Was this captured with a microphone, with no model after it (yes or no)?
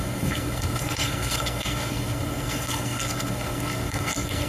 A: no